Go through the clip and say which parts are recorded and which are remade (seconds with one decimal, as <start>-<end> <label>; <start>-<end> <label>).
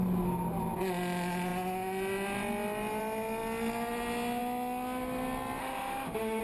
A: 0.0-5.6 recorded; 5.6-6.4 remade